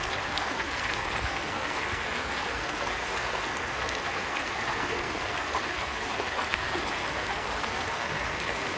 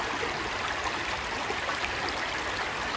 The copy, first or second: first